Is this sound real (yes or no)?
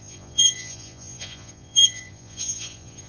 no